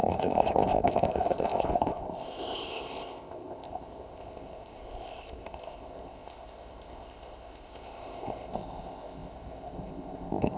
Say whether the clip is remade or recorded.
remade